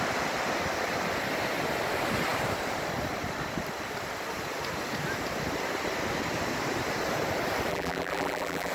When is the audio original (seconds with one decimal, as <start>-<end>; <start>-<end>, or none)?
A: 0.0-7.7